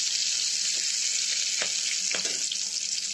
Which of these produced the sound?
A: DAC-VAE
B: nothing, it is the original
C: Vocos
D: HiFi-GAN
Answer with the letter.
B